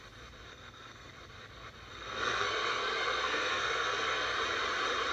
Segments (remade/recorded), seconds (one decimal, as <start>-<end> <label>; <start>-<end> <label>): 0.0-0.5 recorded; 0.5-1.1 remade; 1.1-1.9 recorded; 1.9-4.4 remade; 4.4-5.1 recorded